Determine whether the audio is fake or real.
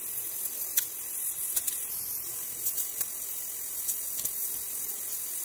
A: real